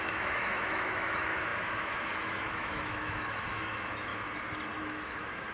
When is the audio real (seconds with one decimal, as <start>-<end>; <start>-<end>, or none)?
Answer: 4.1-4.8